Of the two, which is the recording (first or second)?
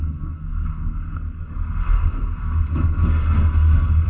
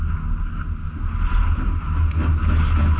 second